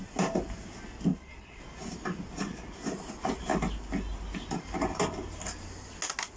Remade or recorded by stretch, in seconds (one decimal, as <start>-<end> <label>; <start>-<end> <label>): 0.0-1.1 recorded; 1.1-1.6 remade; 1.6-6.4 recorded